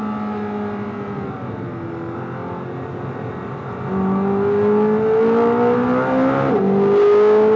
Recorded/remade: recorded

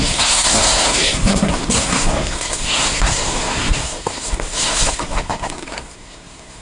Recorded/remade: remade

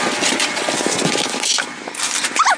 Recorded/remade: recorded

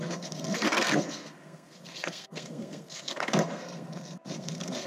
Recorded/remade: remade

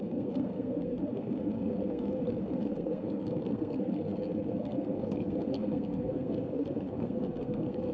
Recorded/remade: remade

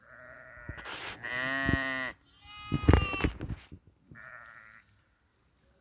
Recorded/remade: recorded